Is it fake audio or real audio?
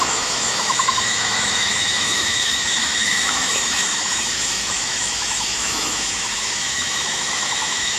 fake